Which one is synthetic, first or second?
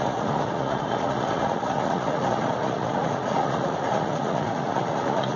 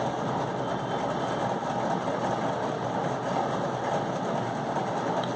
first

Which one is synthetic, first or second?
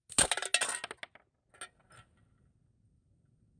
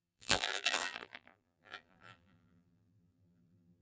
second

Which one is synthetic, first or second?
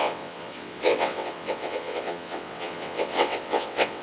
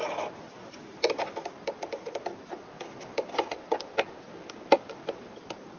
first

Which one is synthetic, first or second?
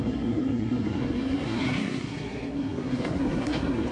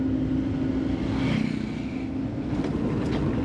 first